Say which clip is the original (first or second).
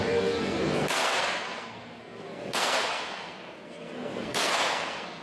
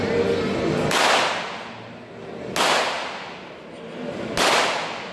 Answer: second